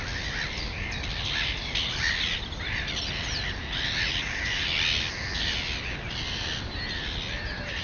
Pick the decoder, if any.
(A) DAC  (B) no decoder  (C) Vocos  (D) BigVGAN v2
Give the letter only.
B